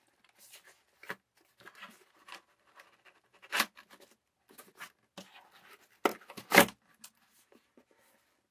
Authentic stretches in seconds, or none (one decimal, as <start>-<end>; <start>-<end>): 0.0-8.5